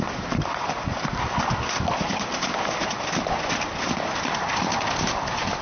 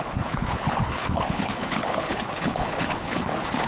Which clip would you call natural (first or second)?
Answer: first